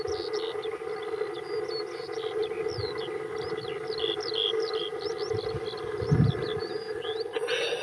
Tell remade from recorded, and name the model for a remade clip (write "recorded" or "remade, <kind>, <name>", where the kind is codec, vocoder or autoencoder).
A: recorded